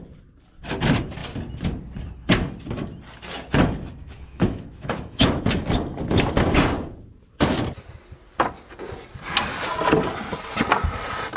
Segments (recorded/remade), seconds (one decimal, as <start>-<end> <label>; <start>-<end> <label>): 0.0-4.0 recorded; 4.0-5.4 remade; 5.4-11.4 recorded